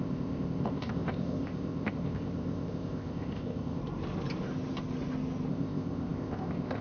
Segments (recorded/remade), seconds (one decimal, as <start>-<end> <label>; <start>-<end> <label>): 0.0-3.8 remade; 3.8-5.5 recorded; 5.5-6.8 remade